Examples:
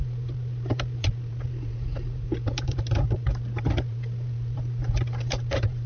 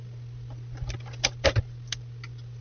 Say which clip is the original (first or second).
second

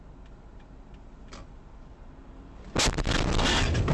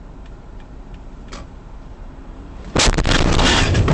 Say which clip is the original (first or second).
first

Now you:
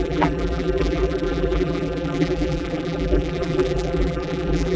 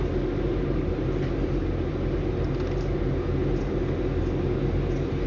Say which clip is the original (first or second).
second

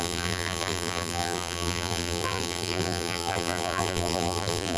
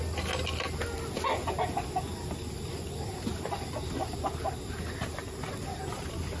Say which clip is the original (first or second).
second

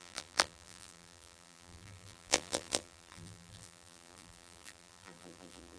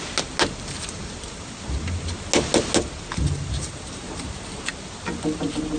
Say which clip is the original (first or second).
second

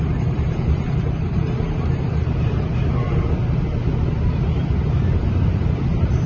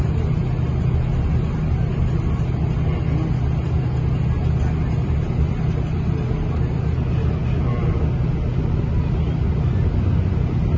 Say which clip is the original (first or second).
second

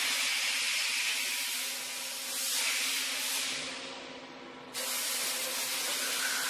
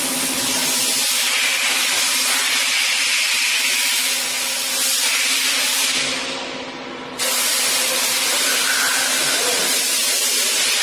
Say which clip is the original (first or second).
first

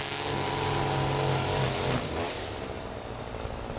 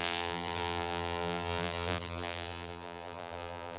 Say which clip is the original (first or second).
first